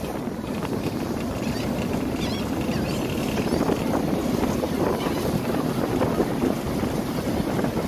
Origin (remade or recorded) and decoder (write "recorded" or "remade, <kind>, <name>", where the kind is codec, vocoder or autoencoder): recorded